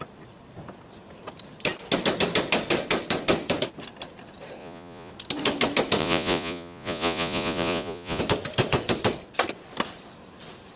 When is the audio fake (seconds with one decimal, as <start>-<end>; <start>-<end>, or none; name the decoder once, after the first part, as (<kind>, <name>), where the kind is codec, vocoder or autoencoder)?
4.6-5.1 (vocoder, Vocos); 6.0-8.2